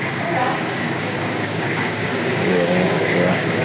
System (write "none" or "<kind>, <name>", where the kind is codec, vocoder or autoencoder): codec, DAC